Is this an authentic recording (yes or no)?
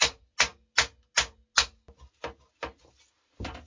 yes